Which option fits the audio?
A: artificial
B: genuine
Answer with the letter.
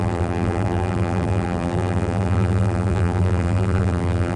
A